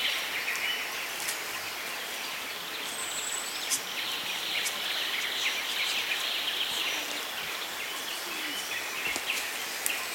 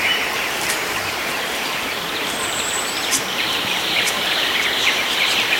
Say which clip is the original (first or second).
first